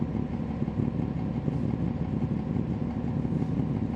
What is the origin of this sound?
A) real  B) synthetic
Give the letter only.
A